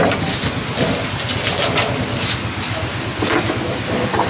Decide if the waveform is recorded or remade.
recorded